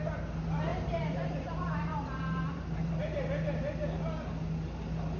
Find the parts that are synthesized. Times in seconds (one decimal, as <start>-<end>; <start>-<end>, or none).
0.7-3.1